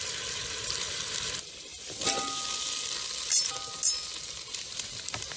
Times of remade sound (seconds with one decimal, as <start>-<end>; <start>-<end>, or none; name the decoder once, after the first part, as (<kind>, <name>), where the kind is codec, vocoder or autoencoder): none